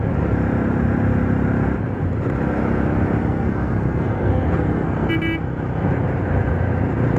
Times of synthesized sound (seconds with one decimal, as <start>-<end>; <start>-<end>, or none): 3.2-5.1